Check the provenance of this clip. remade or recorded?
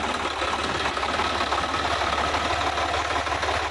recorded